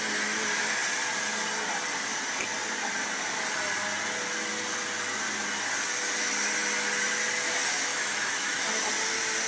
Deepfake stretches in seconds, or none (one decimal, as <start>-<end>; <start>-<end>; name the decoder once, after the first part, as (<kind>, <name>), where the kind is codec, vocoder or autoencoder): 7.9-8.6 (autoencoder, DAC-VAE)